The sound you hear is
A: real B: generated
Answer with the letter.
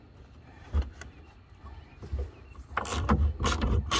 A